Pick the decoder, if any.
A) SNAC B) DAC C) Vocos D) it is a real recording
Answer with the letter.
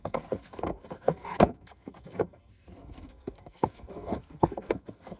A